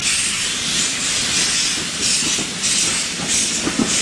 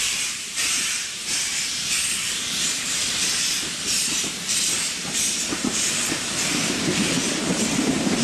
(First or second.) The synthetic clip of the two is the second